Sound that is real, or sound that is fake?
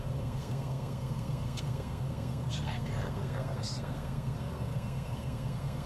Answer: fake